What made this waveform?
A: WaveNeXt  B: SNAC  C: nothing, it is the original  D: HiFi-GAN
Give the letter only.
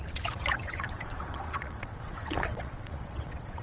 A